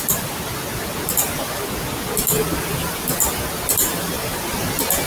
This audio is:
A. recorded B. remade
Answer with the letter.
A